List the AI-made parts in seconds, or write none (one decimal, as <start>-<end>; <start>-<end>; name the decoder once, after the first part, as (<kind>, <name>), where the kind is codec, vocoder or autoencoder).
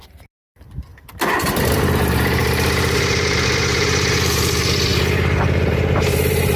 0.0-0.9 (vocoder, BigVGAN v2); 1.4-6.6